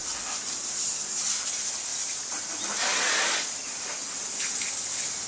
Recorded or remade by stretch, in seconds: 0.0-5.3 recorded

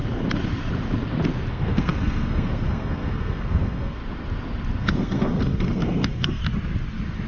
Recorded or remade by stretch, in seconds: 0.0-1.5 recorded; 1.5-4.0 remade; 4.0-4.8 recorded; 4.8-6.4 remade; 6.4-7.3 recorded